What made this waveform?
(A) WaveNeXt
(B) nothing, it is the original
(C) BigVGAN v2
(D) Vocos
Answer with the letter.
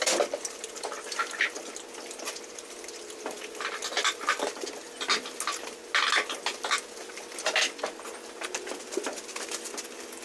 B